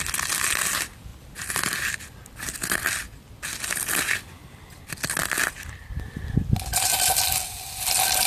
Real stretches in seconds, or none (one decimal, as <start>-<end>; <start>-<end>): 0.0-8.3